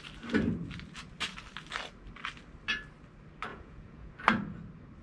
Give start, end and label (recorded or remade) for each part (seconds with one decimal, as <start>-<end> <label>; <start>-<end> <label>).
0.0-3.5 recorded; 3.5-4.1 remade; 4.1-5.0 recorded